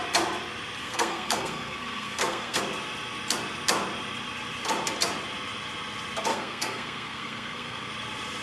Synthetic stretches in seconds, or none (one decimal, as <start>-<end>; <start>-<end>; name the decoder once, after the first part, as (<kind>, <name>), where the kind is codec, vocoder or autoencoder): 0.8-2.6 (codec, SNAC); 6.3-7.9